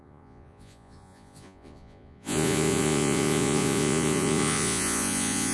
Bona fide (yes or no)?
no